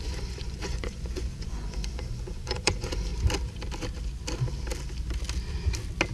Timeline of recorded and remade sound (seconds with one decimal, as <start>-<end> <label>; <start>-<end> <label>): 0.0-3.1 remade; 3.1-6.1 recorded